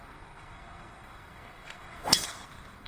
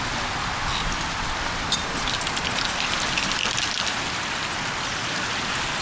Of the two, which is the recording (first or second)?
second